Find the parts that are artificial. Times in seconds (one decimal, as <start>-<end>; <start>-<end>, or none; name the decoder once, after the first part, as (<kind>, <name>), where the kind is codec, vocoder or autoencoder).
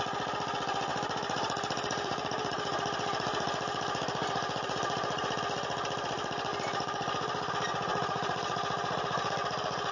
0.9-5.4 (vocoder, BigVGAN v2); 6.5-7.5; 7.9-9.3